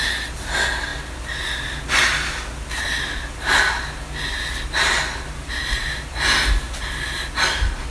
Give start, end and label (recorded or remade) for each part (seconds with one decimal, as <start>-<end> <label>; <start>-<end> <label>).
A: 0.0-7.9 recorded